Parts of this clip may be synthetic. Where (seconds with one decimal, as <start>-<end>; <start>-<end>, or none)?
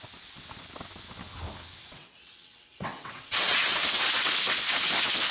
1.8-4.4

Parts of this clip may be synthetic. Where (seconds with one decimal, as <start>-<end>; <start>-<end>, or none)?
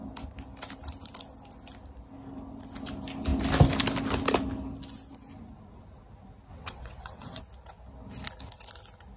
6.5-7.4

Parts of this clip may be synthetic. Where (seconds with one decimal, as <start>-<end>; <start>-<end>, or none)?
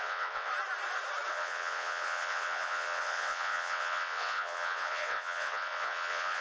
0.0-0.5; 1.3-6.4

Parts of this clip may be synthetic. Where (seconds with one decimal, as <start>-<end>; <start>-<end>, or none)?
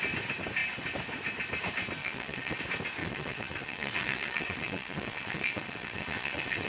2.0-2.6; 3.0-6.7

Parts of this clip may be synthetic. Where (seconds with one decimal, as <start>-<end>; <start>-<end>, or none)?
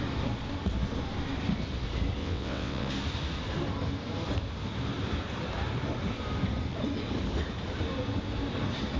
2.2-2.9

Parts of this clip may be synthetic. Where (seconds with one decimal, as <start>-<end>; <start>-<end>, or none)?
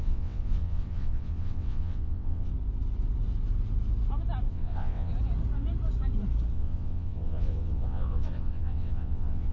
0.0-2.5; 4.5-5.1; 6.5-9.5